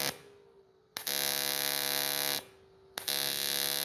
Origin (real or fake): real